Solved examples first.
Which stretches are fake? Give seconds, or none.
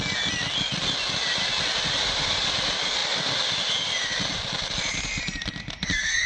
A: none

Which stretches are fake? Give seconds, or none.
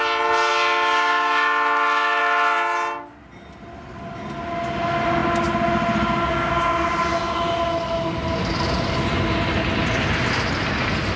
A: none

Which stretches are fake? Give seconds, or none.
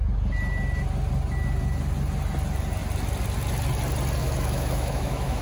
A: 4.2-5.4 (autoencoder, DAC-VAE)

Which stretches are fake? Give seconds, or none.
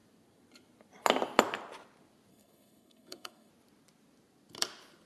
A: 2.3-3.5 (codec, SNAC)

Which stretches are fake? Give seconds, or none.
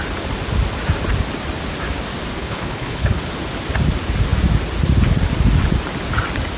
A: 2.4-3.2 (codec, HILCodec)